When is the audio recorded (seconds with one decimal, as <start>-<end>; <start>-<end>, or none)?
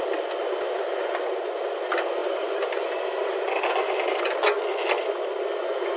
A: 0.0-2.2; 4.2-6.0